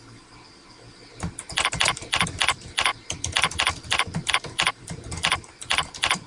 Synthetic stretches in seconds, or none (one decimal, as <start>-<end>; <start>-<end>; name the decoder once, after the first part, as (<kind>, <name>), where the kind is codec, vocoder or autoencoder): 0.0-6.3 (vocoder, BigVGAN v2)